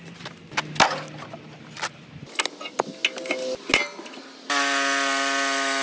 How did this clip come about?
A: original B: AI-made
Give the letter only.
A